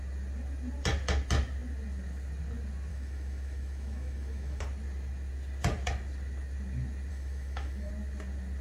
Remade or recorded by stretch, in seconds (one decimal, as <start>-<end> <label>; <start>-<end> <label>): 0.0-2.9 recorded; 2.9-4.6 remade; 4.6-7.1 recorded; 7.1-7.9 remade; 7.9-8.6 recorded